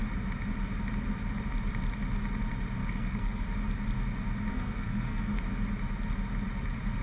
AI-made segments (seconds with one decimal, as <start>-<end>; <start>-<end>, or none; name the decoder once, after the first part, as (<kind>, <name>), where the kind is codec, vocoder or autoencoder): 2.8-3.4 (codec, SNAC); 4.5-5.4